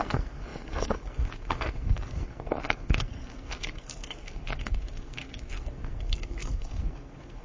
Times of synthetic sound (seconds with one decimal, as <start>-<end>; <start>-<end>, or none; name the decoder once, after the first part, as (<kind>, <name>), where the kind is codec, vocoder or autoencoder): 0.0-7.4 (codec, SNAC)